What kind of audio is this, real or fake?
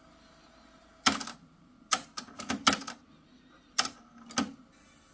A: real